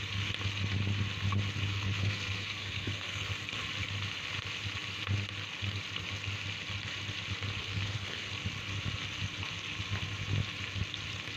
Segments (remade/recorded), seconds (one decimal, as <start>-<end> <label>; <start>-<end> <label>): 0.0-1.7 recorded; 1.7-3.3 remade; 3.3-7.6 recorded; 7.6-8.3 remade; 8.3-11.4 recorded

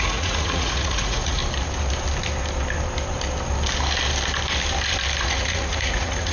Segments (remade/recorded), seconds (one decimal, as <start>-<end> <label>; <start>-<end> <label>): 0.0-1.4 remade; 1.4-5.2 recorded; 5.2-6.3 remade

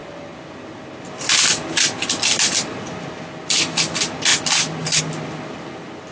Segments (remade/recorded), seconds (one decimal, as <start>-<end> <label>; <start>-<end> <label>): 0.0-6.1 recorded

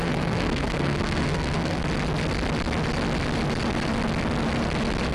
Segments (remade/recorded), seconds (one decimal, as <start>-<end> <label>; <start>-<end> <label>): 0.0-1.8 remade; 1.8-5.1 recorded

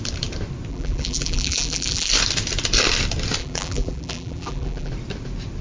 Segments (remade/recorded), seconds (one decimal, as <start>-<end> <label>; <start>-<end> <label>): 0.0-0.7 recorded; 0.7-2.1 remade; 2.1-3.4 recorded; 3.4-4.9 remade; 4.9-5.6 recorded

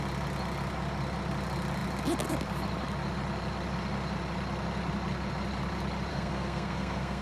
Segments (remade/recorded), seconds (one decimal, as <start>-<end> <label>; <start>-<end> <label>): 0.0-6.1 recorded; 6.1-7.2 remade